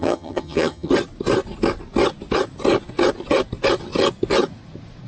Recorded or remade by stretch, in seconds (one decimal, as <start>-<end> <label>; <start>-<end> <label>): 0.0-0.9 remade; 0.9-5.1 recorded